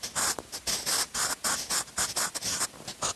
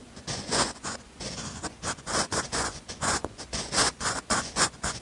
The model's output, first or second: second